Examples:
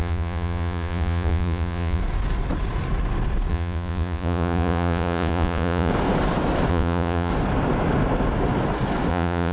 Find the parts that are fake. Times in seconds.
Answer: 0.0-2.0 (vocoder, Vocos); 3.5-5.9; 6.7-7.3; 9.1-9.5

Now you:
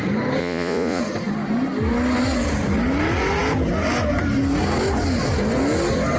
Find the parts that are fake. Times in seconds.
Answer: 0.4-1.0 (vocoder, Vocos)

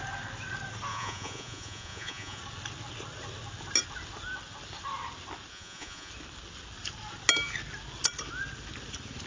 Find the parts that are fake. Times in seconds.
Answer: 0.9-2.4 (vocoder, Vocos); 5.5-6.1

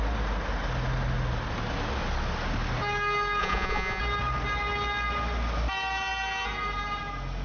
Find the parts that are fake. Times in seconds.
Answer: 3.4-4.0 (vocoder, Vocos)

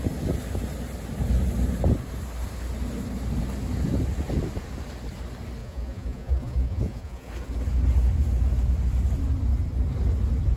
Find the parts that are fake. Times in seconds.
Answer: 5.6-7.3 (vocoder, Vocos)